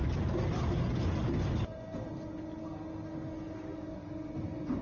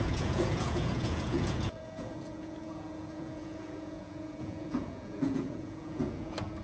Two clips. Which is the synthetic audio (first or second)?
second